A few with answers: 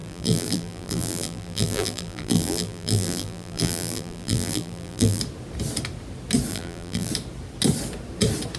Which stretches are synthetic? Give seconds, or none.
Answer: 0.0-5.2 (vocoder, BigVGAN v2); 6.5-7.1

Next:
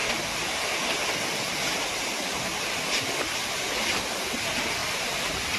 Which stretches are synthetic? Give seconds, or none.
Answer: 4.8-5.6 (vocoder, BigVGAN v2)